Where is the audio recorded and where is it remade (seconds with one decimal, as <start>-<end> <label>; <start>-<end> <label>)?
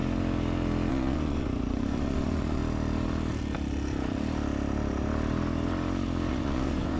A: 0.0-0.9 recorded; 0.9-2.6 remade; 2.6-6.3 recorded; 6.3-7.0 remade